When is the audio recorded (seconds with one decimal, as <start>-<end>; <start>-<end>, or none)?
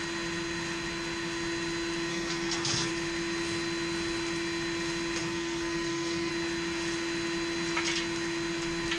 0.0-2.1; 2.9-5.2; 6.3-9.0